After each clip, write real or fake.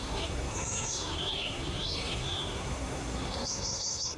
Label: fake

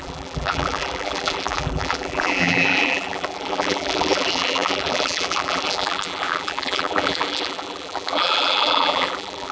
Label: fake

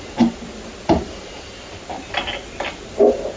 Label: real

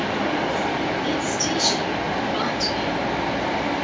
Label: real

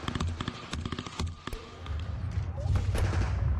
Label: real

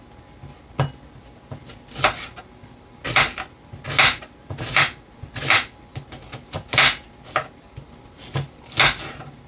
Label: real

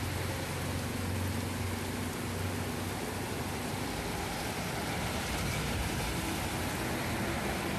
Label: real